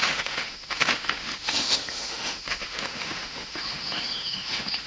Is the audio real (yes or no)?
no